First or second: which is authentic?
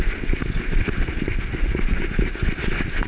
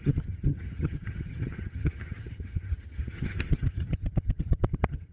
first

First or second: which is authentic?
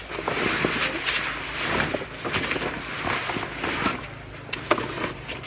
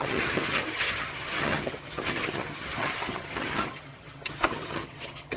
first